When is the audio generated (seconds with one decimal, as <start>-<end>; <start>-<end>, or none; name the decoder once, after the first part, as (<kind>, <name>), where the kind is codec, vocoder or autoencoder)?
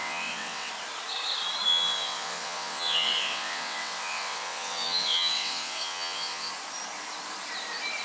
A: 0.0-0.7 (vocoder, WaveNeXt); 1.7-6.5